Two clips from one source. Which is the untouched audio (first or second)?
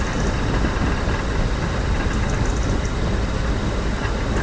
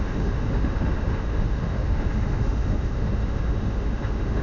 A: first